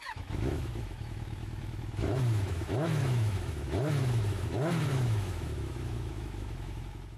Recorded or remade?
remade